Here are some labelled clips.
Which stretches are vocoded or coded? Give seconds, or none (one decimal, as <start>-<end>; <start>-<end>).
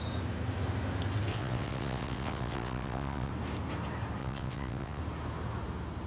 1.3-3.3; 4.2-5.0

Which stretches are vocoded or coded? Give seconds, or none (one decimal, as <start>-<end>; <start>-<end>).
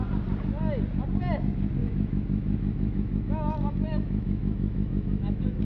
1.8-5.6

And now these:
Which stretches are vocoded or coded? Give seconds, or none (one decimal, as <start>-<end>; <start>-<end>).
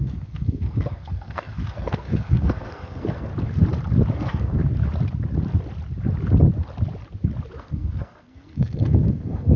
0.0-3.3; 4.1-4.6; 7.6-9.6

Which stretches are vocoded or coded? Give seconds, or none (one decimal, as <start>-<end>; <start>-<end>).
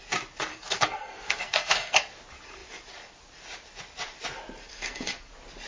0.5-2.0; 4.7-5.3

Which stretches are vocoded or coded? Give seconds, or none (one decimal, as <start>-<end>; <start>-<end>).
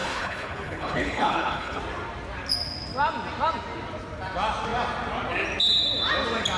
0.0-1.8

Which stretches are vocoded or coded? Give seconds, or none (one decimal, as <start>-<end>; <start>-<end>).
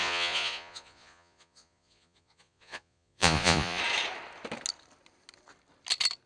0.0-3.8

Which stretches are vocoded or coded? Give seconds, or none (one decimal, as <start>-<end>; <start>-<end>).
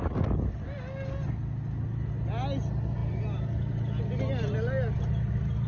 none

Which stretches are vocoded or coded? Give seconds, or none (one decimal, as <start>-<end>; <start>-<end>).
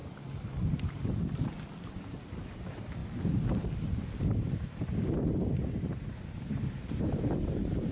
2.0-3.0; 4.2-7.9